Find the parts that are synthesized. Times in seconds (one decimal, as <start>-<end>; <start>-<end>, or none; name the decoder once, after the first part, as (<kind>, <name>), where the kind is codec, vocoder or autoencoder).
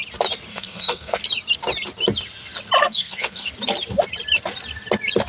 0.5-1.2 (codec, SNAC); 2.8-3.5